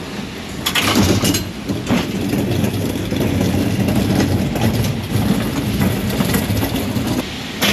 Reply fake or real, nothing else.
real